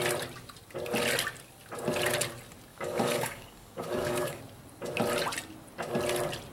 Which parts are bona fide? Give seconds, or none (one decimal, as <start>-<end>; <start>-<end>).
0.0-2.7; 4.4-6.5